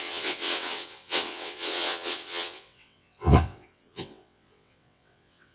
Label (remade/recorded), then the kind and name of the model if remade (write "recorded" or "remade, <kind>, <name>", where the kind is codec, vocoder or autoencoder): remade, vocoder, WaveNeXt